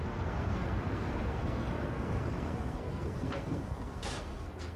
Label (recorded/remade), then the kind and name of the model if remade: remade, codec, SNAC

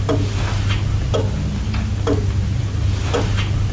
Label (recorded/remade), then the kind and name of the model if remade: recorded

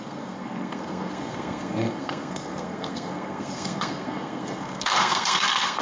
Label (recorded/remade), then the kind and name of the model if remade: remade, codec, SNAC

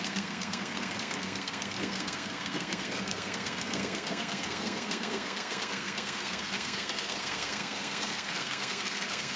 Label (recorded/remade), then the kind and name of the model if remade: remade, codec, SNAC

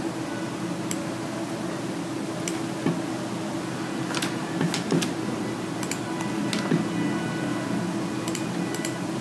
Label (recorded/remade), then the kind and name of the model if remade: recorded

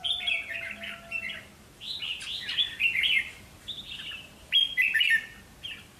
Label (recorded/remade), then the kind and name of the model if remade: recorded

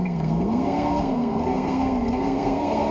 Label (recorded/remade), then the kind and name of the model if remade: remade, codec, SNAC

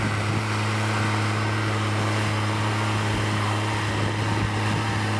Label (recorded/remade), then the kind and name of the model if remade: recorded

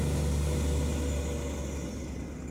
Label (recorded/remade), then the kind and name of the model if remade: recorded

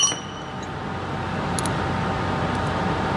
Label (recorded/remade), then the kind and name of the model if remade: recorded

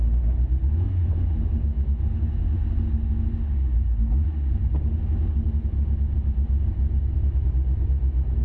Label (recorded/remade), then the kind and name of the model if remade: recorded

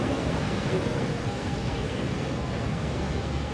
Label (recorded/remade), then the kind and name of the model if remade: remade, codec, SNAC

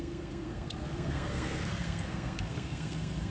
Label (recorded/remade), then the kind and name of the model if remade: remade, codec, SNAC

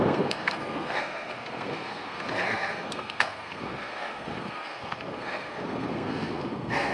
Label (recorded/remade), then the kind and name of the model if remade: remade, codec, SNAC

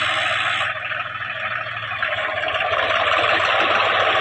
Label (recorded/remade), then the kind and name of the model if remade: recorded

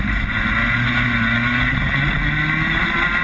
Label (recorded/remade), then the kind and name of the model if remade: recorded